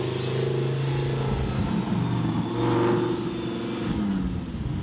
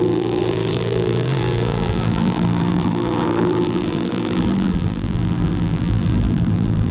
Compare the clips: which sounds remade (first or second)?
second